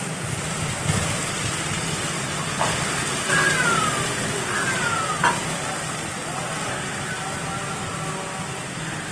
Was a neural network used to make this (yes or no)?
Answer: no